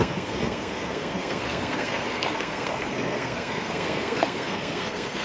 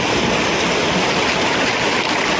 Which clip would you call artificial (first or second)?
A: first